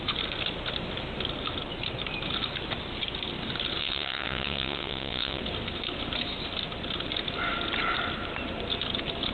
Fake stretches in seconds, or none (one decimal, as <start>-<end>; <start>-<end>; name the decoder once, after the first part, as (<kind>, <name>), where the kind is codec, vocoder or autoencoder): 3.8-5.4 (vocoder, WaveNeXt)